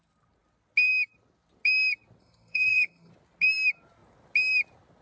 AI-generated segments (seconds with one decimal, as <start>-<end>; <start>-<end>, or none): 2.2-3.1